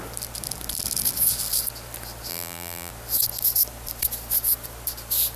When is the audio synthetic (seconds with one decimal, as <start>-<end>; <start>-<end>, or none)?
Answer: 2.3-2.9